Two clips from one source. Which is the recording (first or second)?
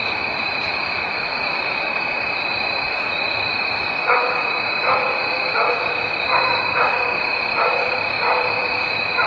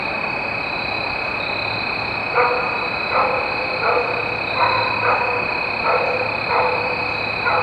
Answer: second